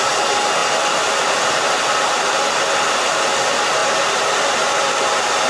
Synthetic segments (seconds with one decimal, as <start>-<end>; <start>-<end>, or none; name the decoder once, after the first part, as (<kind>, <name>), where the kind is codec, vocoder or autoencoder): none